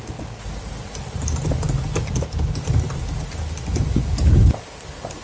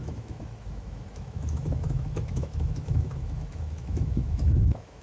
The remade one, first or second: second